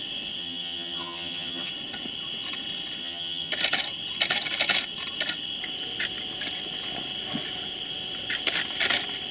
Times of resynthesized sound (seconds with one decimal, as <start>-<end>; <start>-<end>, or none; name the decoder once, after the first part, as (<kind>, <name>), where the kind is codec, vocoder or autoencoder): 0.4-1.7 (vocoder, HiFi-GAN); 3.0-3.5